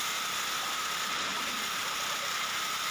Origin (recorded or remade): recorded